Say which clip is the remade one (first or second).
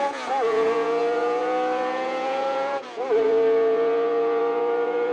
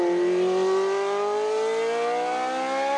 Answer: first